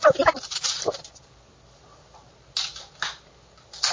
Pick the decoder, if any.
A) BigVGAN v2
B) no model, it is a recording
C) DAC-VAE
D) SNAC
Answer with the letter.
B